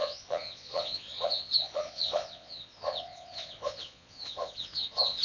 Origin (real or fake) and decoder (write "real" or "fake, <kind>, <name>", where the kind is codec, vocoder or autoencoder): fake, vocoder, Vocos